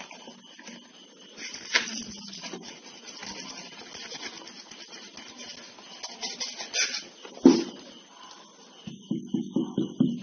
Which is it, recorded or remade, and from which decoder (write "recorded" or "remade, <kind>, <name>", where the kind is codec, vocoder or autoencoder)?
recorded